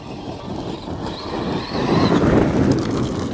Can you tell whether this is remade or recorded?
recorded